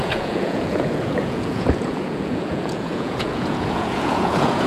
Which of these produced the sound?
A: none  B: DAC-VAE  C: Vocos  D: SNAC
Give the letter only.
C